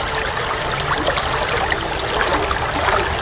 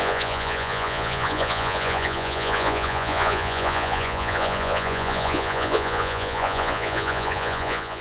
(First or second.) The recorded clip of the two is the first